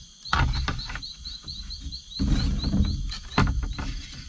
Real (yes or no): yes